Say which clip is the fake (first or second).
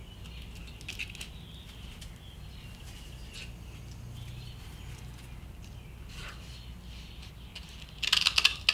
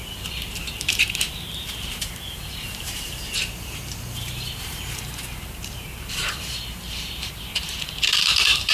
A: second